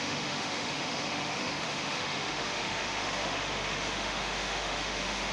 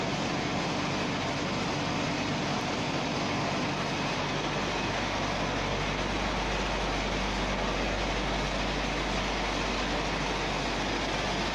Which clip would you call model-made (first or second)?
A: first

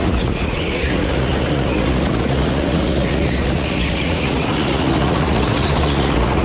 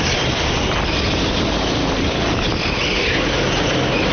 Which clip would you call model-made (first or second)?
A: first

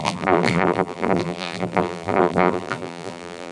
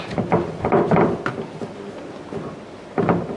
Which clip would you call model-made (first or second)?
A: first